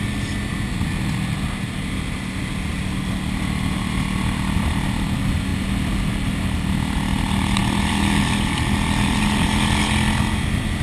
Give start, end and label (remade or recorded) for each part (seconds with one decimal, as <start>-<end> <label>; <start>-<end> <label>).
0.0-10.8 recorded